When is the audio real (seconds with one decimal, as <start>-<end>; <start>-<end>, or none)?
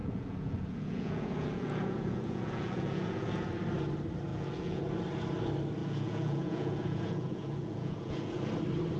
3.5-4.3; 4.8-5.8; 8.5-9.0